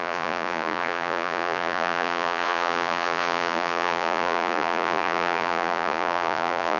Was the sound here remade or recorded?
remade